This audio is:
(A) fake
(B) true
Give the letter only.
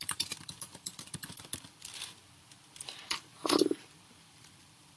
A